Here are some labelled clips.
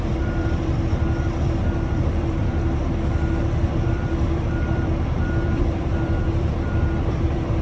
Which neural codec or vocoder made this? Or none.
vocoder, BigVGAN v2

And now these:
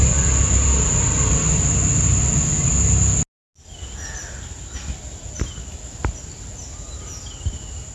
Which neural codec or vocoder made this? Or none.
none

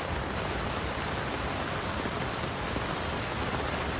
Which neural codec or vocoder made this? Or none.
vocoder, BigVGAN v2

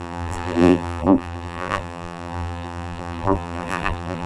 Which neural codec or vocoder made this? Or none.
vocoder, BigVGAN v2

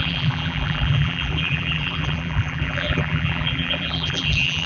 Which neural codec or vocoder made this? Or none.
vocoder, BigVGAN v2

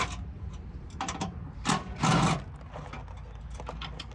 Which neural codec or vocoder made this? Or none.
none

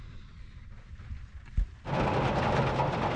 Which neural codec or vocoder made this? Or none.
none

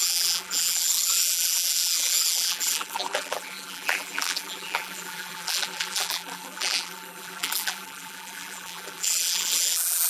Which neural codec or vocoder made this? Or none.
vocoder, BigVGAN v2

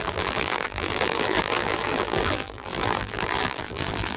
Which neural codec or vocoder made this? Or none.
vocoder, BigVGAN v2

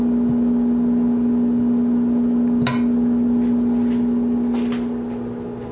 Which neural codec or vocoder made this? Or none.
none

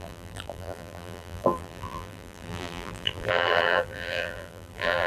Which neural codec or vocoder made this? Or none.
vocoder, BigVGAN v2